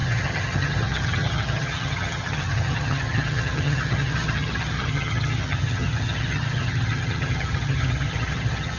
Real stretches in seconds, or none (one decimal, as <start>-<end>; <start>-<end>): none